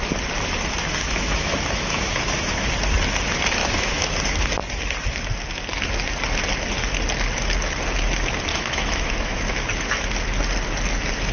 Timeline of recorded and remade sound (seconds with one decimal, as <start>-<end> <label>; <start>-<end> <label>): 0.0-1.0 recorded; 1.0-2.7 remade; 2.7-3.6 recorded; 3.6-4.1 remade; 4.1-8.5 recorded; 8.5-9.4 remade; 9.4-11.3 recorded